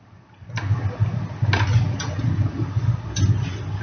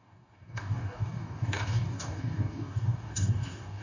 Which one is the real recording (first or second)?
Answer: first